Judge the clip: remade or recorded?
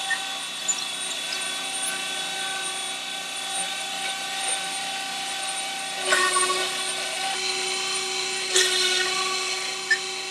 recorded